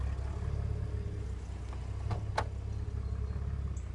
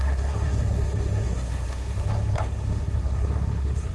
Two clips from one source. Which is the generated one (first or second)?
second